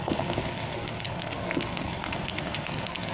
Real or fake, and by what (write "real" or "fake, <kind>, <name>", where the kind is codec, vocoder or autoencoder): fake, codec, SNAC